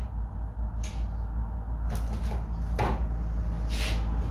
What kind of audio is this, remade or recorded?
recorded